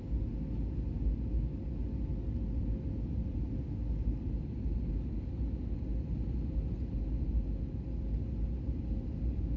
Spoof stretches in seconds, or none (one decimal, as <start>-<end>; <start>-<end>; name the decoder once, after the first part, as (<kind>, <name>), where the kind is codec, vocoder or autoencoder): none